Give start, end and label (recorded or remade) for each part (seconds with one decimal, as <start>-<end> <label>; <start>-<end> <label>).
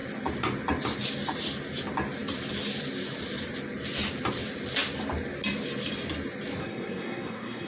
0.0-6.6 recorded; 6.6-7.7 remade